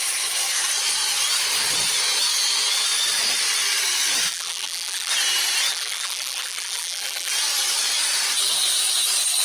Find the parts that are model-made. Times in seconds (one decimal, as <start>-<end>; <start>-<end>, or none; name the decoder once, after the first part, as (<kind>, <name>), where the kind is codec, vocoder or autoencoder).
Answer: 4.3-5.1 (vocoder, BigVGAN v2); 5.7-7.3